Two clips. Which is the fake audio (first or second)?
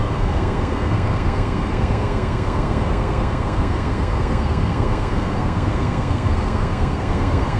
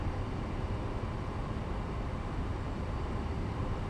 first